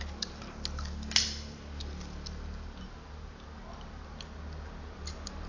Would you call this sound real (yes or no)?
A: yes